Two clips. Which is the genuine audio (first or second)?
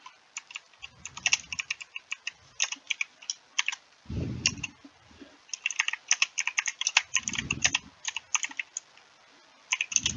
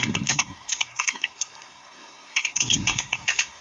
first